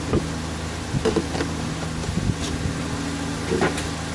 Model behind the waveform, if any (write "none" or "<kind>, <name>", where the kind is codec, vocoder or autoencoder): none